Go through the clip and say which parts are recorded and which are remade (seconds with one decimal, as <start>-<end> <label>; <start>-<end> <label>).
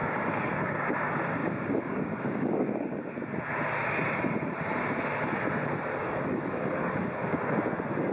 0.0-0.9 remade; 0.9-1.4 recorded; 1.4-3.0 remade; 3.0-5.9 recorded; 5.9-7.6 remade; 7.6-8.1 recorded